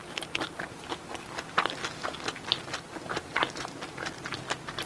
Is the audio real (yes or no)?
no